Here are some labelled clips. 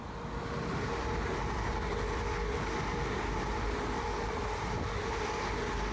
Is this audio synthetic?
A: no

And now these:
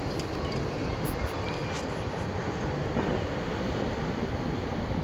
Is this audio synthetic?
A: yes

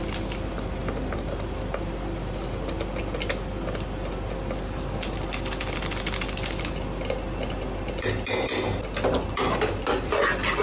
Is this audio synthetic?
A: no